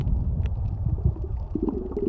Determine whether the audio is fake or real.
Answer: real